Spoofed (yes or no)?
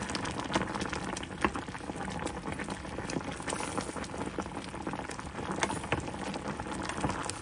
no